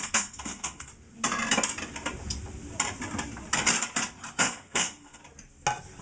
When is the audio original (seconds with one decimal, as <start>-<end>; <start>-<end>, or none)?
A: 0.9-4.4; 5.2-6.0